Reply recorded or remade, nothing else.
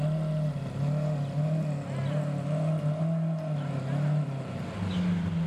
recorded